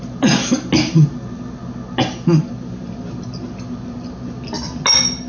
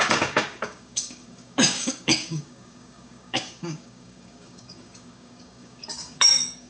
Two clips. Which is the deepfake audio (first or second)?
second